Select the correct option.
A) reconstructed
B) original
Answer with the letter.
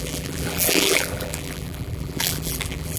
A